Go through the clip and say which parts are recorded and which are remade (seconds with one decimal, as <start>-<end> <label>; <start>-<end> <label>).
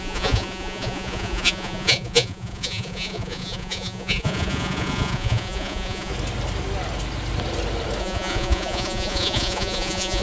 0.0-6.1 remade; 6.1-8.0 recorded; 8.0-10.2 remade